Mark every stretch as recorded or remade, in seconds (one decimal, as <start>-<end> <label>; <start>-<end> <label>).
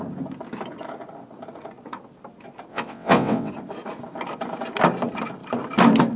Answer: 0.0-2.7 recorded; 2.7-3.5 remade; 3.5-6.2 recorded